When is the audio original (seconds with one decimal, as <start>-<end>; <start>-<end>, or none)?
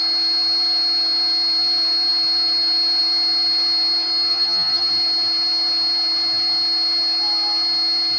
0.0-4.3; 4.9-8.2